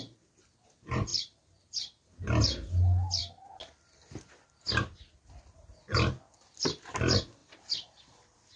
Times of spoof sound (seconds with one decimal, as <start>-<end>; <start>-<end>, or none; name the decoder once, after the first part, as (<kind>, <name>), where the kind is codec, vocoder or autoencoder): 1.1-2.2 (vocoder, BigVGAN v2); 7.4-8.6